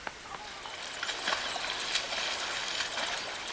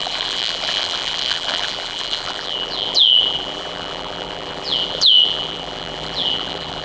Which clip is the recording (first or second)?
first